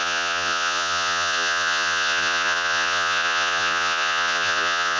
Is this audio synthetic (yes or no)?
yes